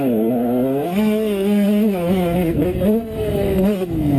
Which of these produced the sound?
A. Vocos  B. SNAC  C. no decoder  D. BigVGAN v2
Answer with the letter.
B